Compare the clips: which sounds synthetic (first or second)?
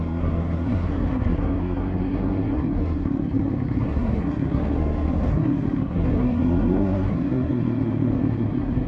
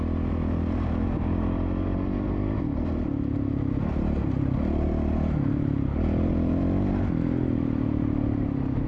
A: first